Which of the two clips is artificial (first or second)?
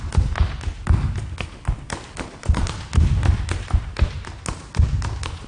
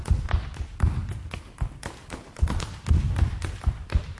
second